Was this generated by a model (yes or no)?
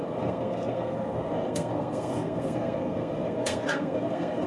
yes